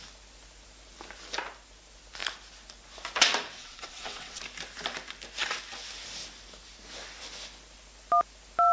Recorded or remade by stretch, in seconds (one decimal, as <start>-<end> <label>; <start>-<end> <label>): 0.0-3.6 recorded; 3.6-4.4 remade; 4.4-8.7 recorded